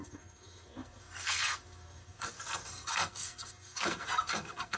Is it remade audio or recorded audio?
remade